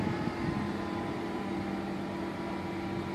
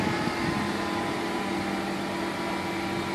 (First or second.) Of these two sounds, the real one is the second